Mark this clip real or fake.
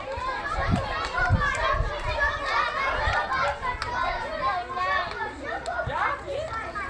real